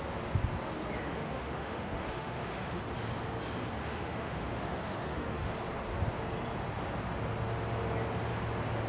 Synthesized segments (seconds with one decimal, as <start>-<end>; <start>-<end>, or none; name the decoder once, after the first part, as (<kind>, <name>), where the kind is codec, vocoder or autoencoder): 0.8-2.8 (autoencoder, DAC-VAE); 3.8-5.5